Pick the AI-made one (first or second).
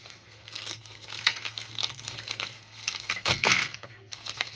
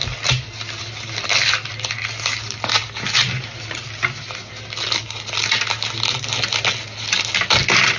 first